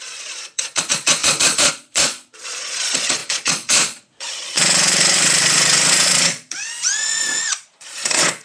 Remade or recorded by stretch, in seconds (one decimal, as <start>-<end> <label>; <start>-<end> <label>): 0.0-8.4 remade